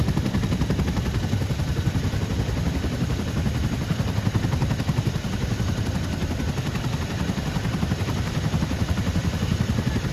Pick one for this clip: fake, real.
fake